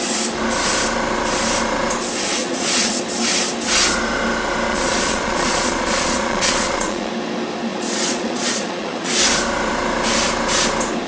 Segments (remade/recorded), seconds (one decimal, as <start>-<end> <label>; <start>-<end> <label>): 0.0-2.4 recorded; 2.4-3.0 remade; 3.0-4.7 recorded; 4.7-7.1 remade; 7.1-7.7 recorded; 7.7-9.1 remade; 9.1-11.1 recorded

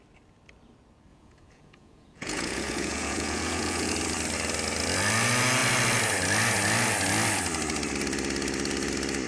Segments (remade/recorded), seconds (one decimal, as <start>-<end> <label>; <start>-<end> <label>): 0.0-1.1 recorded; 1.1-3.9 remade; 3.9-9.3 recorded